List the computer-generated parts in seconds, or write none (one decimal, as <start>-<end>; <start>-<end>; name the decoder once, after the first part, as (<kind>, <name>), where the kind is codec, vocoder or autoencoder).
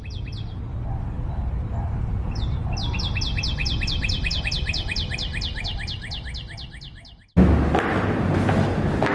3.6-4.4 (vocoder, BigVGAN v2)